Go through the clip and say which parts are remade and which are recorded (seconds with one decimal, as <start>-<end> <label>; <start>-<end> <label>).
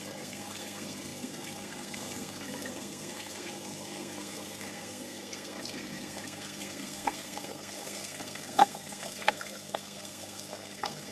0.0-11.1 remade